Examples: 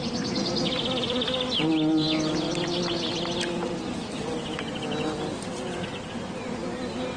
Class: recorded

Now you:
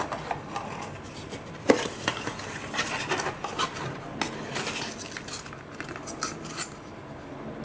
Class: recorded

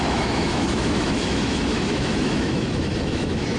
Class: remade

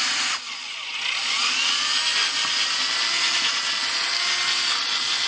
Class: recorded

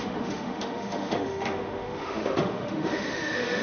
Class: remade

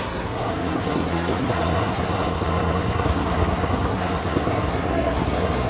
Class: remade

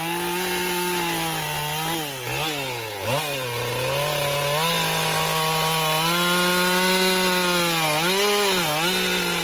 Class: recorded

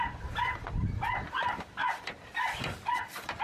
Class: remade